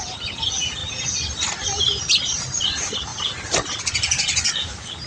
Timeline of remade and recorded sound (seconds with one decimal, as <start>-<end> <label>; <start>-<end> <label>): 0.0-5.1 recorded